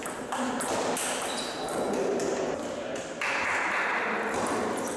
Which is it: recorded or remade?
recorded